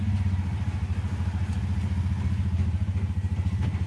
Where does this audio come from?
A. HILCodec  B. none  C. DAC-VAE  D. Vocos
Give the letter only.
B